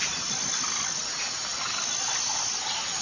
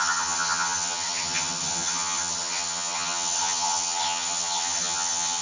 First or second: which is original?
first